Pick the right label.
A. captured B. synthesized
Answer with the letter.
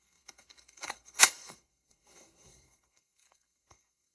B